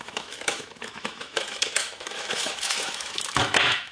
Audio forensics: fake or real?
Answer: fake